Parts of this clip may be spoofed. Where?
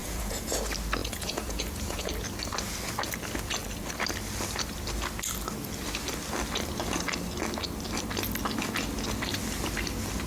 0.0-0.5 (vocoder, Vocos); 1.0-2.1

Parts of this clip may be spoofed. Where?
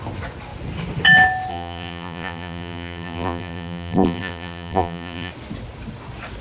1.5-5.3 (vocoder, BigVGAN v2)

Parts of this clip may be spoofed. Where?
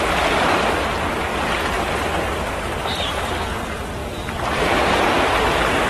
1.3-3.3 (vocoder, BigVGAN v2); 4.0-5.0